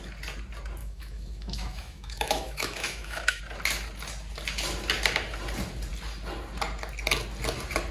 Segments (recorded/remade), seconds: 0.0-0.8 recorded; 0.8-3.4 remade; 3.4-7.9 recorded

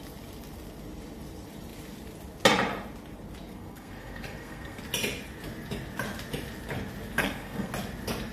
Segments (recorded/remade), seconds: 0.0-3.5 recorded; 3.5-4.8 remade; 4.8-7.2 recorded; 7.2-7.7 remade; 7.7-8.3 recorded

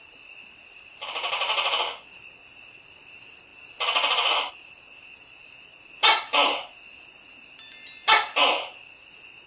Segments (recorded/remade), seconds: 0.0-9.5 recorded

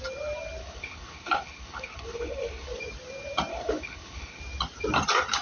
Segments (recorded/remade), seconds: 0.0-0.6 recorded; 0.6-2.8 remade; 2.8-3.5 recorded; 3.5-4.4 remade; 4.4-5.4 recorded

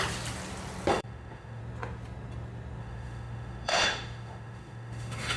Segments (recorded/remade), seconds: 0.0-0.9 recorded; 0.9-1.6 remade; 1.6-2.8 recorded; 2.8-5.4 remade

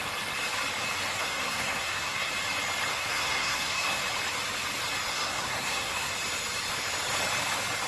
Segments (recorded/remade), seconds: 0.0-1.1 recorded; 1.1-2.3 remade; 2.3-2.9 recorded; 2.9-4.0 remade; 4.0-5.1 recorded; 5.1-6.1 remade; 6.1-7.9 recorded

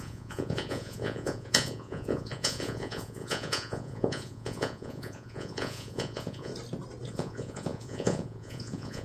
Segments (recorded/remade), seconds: 0.0-6.5 remade; 6.5-7.1 recorded; 7.1-9.0 remade

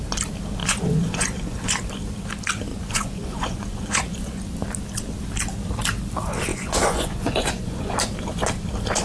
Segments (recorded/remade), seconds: 0.0-0.6 recorded; 0.6-1.8 remade; 1.8-2.7 recorded; 2.7-4.4 remade; 4.4-6.5 recorded; 6.5-7.9 remade; 7.9-9.0 recorded